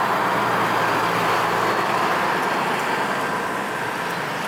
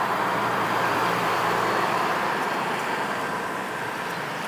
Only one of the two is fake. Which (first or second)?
second